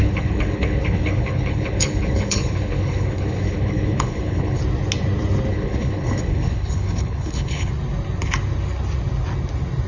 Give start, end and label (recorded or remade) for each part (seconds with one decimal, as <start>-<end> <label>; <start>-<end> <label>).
0.0-4.6 remade; 4.6-5.5 recorded; 5.5-7.7 remade; 7.7-9.9 recorded